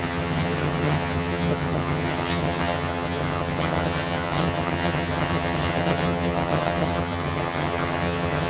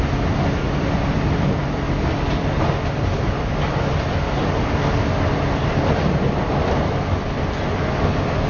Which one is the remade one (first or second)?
first